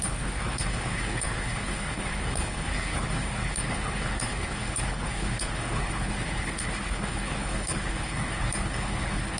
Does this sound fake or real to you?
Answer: fake